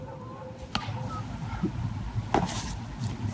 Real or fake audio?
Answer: real